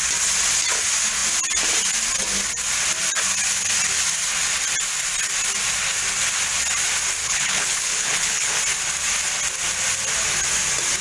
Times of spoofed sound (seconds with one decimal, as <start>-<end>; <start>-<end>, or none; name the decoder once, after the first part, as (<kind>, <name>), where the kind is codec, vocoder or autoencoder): 7.2-8.6 (codec, HILCodec)